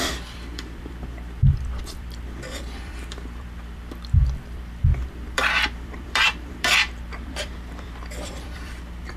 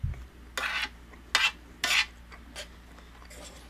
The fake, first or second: first